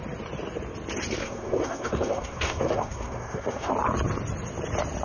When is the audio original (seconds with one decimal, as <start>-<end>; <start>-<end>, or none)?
0.0-1.2; 3.7-5.0